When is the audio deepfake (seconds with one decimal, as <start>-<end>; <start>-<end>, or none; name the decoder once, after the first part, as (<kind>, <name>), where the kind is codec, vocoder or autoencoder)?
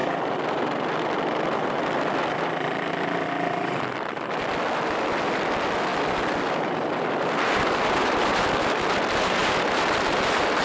0.0-10.6 (vocoder, BigVGAN v2)